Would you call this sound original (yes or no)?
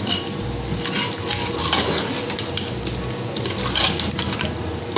yes